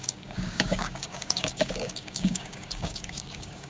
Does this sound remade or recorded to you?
remade